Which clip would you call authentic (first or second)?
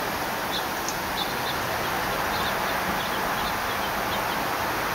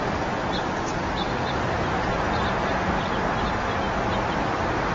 first